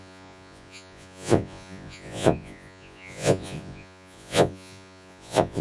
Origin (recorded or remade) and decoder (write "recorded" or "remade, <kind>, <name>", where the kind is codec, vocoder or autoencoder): remade, vocoder, Vocos